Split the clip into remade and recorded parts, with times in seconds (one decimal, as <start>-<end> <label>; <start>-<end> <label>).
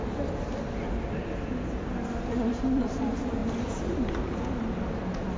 0.0-5.4 recorded